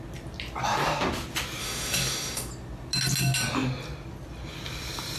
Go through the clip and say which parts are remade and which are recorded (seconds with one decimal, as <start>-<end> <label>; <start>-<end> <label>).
0.0-1.6 recorded; 1.6-2.5 remade; 2.5-5.2 recorded